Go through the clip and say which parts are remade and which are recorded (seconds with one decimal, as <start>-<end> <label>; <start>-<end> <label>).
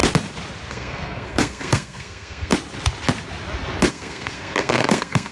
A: 0.0-0.7 recorded; 0.7-2.5 remade; 2.5-3.9 recorded; 3.9-5.3 remade